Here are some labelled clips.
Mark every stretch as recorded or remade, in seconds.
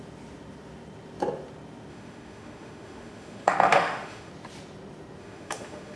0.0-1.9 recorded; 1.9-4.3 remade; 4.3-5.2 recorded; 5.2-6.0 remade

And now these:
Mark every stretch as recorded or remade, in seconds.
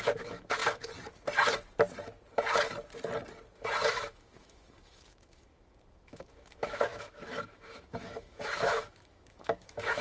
0.0-0.6 remade; 0.6-3.9 recorded; 3.9-10.0 remade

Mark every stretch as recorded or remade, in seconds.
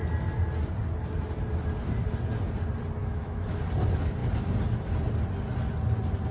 0.0-3.0 recorded; 3.0-3.6 remade; 3.6-6.3 recorded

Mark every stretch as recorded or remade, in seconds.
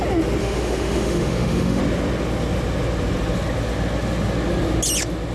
0.0-0.4 recorded; 0.4-1.8 remade; 1.8-5.3 recorded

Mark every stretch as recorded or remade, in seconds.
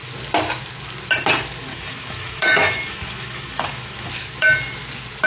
0.0-1.7 recorded; 1.7-4.1 remade; 4.1-5.3 recorded